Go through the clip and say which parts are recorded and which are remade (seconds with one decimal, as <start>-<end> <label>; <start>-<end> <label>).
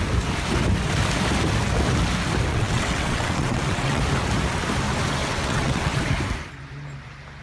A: 0.0-2.5 recorded; 2.5-4.0 remade; 4.0-5.2 recorded; 5.2-6.0 remade; 6.0-7.4 recorded